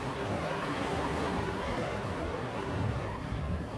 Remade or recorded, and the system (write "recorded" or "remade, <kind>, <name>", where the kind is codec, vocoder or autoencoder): remade, codec, SNAC